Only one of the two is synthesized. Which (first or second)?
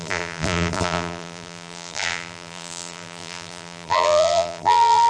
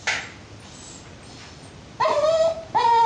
first